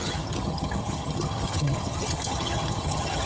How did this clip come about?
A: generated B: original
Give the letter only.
A